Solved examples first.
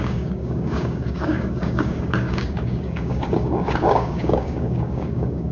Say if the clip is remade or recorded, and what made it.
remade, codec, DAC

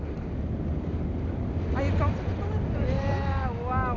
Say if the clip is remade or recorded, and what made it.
recorded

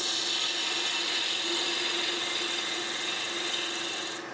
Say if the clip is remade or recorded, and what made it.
recorded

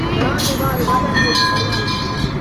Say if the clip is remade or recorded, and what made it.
recorded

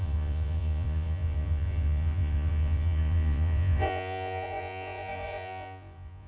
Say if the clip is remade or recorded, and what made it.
remade, vocoder, Vocos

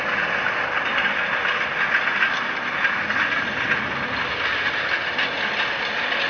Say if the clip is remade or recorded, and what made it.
recorded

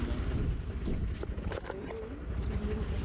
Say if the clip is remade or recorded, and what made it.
recorded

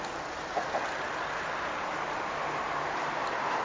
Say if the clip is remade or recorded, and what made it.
recorded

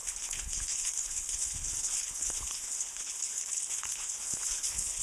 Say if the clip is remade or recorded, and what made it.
remade, codec, HILCodec